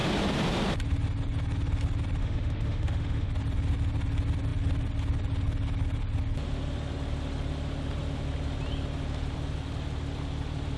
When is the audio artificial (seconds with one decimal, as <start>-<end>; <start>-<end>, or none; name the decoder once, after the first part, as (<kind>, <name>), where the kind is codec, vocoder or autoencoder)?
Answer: 2.2-3.3 (autoencoder, DAC-VAE)